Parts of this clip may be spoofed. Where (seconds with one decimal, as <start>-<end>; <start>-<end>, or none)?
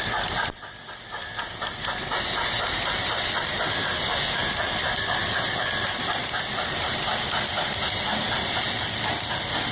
none